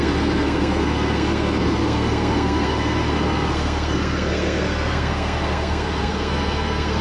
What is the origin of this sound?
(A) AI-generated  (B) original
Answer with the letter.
A